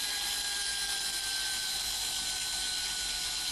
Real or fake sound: real